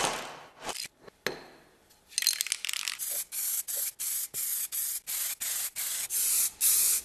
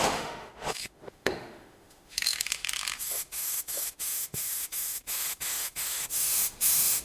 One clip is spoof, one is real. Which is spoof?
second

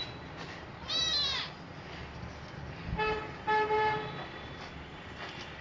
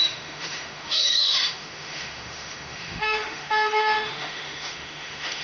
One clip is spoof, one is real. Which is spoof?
second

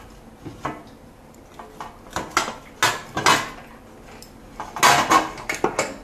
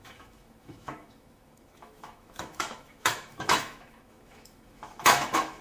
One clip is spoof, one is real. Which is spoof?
second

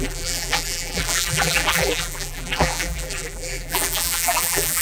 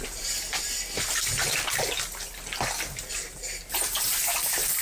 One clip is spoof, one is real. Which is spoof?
first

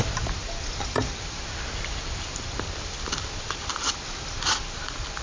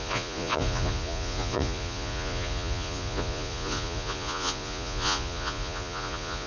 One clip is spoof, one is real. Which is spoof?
second